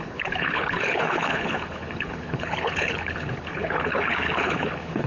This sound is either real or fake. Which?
fake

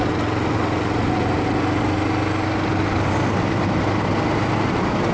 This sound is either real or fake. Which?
real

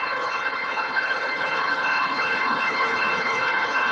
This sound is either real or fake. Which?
fake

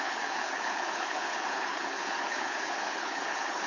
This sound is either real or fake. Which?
fake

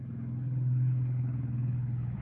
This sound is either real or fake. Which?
fake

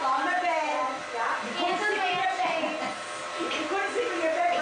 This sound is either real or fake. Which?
real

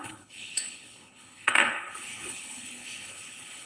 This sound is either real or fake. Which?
fake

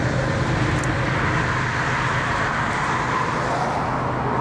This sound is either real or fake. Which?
real